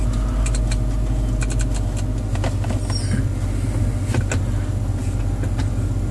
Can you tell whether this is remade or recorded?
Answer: recorded